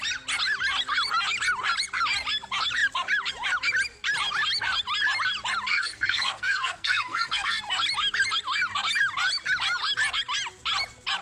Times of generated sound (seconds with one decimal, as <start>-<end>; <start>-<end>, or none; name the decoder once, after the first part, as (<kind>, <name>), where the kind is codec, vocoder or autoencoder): 5.7-7.6 (codec, SNAC)